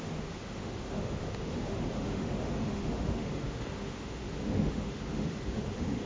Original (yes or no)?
no